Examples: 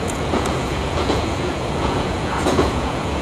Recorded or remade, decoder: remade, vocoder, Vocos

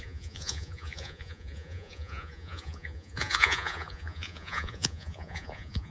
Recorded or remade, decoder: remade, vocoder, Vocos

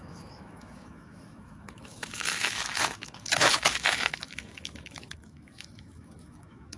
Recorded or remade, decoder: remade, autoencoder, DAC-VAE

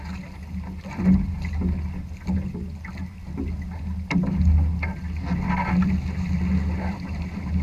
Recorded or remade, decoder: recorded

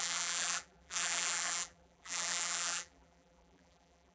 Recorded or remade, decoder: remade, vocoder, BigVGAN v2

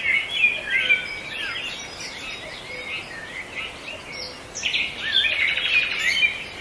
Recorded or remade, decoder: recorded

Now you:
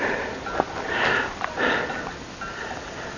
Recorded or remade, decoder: recorded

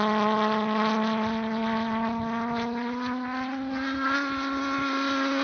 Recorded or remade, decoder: recorded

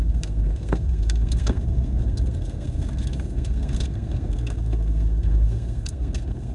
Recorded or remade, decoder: remade, codec, SNAC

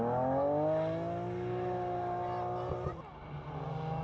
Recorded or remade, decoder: recorded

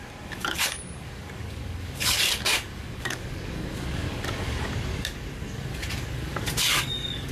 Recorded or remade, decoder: remade, codec, DAC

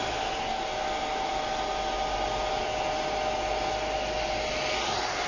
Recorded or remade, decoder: recorded